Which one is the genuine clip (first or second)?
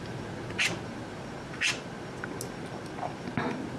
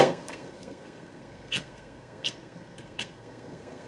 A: first